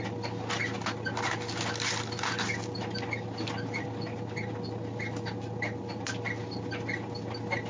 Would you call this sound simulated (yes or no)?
no